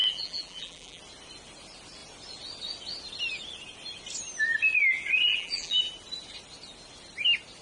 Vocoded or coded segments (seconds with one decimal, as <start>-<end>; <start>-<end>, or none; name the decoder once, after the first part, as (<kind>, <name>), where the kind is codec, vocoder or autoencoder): 0.0-1.0 (vocoder, BigVGAN v2); 5.3-5.9